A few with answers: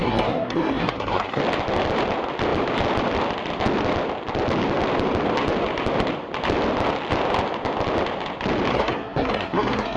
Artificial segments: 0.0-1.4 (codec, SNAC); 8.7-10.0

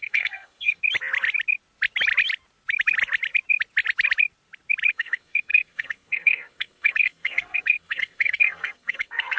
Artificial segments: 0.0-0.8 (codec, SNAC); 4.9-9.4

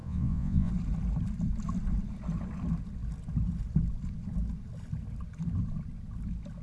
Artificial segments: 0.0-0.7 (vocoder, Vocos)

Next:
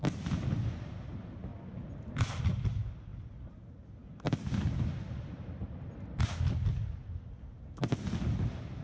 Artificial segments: none